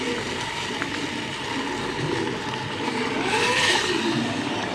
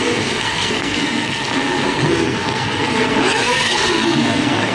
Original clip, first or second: first